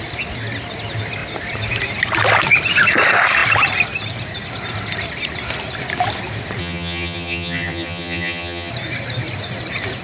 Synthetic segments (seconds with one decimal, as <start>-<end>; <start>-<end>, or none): 6.6-8.7